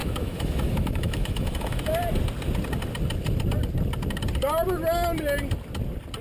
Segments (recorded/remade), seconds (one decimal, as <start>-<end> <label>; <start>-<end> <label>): 0.0-2.0 remade; 2.0-6.2 recorded